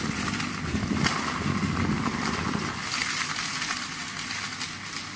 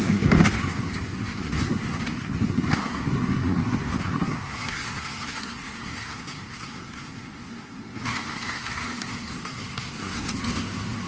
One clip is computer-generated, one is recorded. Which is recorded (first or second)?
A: first